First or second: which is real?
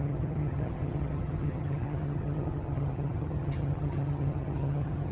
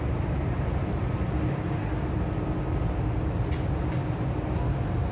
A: second